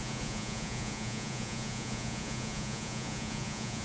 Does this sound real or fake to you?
fake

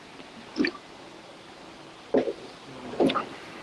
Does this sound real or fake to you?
real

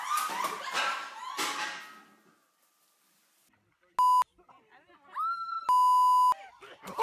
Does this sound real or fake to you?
real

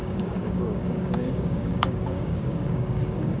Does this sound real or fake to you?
fake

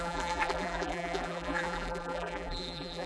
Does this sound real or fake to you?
fake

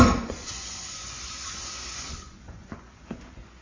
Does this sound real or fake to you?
fake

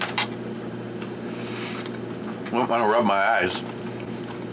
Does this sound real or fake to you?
real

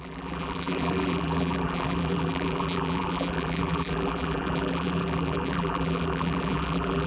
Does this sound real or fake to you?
fake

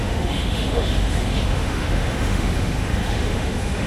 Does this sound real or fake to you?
fake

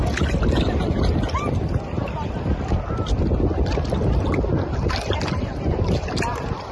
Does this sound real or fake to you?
real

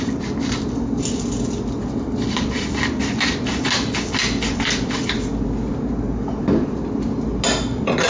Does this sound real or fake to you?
real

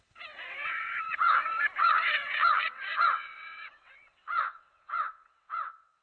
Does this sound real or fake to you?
fake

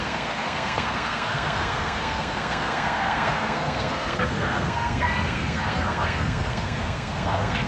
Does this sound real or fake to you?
fake